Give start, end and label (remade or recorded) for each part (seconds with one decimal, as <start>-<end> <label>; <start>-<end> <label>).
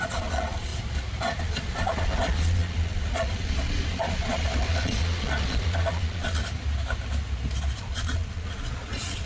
0.0-0.7 remade; 0.7-1.4 recorded; 1.4-6.4 remade; 6.4-7.8 recorded; 7.8-9.3 remade